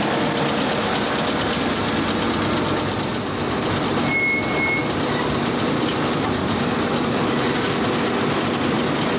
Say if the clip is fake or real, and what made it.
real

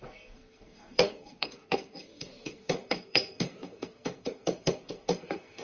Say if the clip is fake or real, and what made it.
fake, codec, SNAC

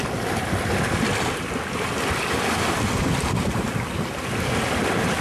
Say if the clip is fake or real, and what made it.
real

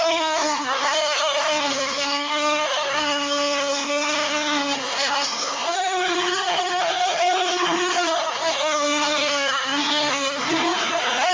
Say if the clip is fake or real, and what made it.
fake, codec, SNAC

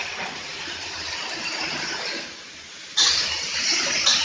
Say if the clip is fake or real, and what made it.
real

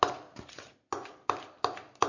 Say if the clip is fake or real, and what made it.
real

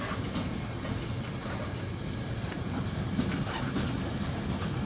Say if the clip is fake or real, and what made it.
real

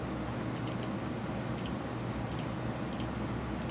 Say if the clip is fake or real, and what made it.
real